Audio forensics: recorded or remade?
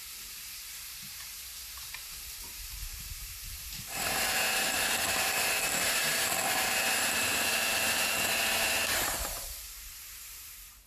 remade